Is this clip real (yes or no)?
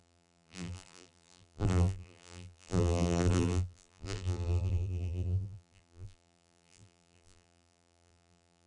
no